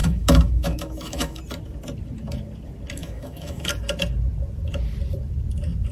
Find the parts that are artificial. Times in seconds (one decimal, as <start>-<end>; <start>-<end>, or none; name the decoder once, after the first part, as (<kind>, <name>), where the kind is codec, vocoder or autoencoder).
0.0-1.4 (autoencoder, DAC-VAE); 3.0-3.7